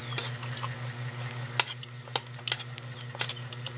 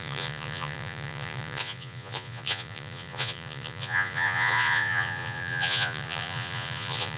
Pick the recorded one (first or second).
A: first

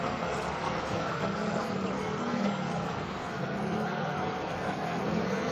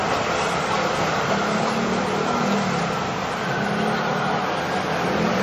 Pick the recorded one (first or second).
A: second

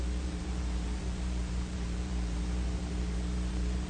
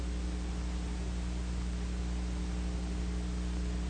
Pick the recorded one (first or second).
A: second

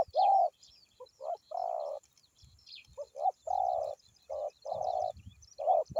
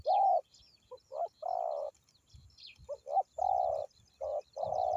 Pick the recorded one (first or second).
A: second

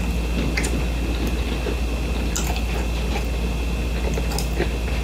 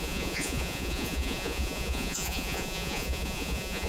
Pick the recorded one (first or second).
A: first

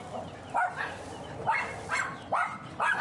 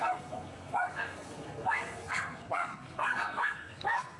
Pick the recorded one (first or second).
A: first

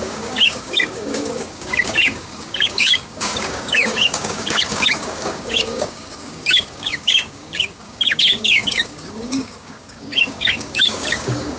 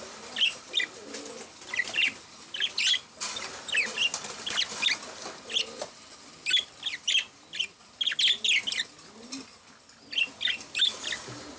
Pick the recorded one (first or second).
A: second